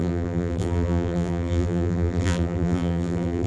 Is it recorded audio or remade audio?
remade